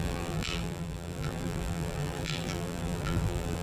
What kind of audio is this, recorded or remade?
remade